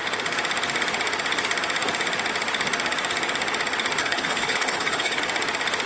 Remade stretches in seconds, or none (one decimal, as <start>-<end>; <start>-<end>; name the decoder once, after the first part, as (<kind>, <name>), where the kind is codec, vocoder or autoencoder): 4.0-5.2 (codec, HILCodec)